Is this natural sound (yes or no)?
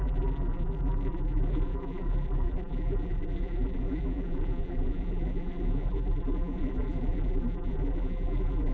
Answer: no